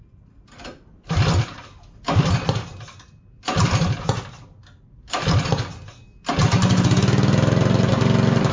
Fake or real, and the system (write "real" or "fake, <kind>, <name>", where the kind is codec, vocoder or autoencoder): real